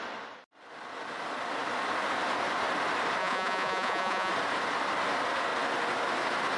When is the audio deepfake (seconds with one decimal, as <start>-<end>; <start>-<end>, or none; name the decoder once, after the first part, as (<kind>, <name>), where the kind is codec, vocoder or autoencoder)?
3.2-4.3 (vocoder, Vocos)

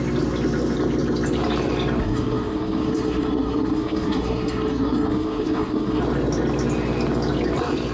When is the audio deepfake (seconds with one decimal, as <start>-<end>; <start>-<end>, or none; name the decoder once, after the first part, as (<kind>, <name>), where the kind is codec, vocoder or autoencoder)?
2.0-6.0 (codec, SNAC)

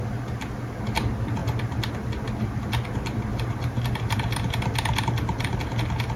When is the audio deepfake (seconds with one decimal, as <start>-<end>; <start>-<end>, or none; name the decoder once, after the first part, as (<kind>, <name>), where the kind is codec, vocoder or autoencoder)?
3.3-4.6 (vocoder, BigVGAN v2)

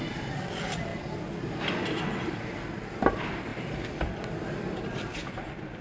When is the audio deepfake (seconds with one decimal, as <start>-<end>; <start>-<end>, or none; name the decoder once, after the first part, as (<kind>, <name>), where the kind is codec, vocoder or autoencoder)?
none